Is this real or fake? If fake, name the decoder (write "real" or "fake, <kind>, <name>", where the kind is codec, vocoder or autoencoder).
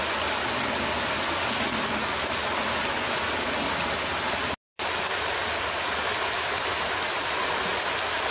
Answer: real